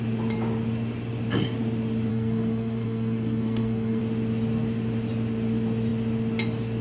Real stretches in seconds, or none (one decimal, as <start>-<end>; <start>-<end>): 0.0-2.1; 4.0-6.8